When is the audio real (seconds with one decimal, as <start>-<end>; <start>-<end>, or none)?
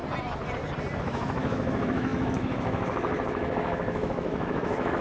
0.0-1.0